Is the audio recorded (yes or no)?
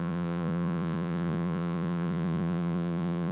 no